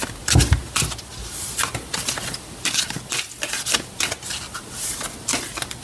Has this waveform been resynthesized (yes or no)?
no